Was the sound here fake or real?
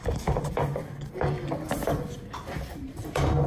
real